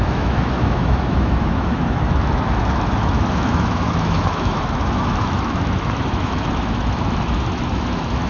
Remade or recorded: remade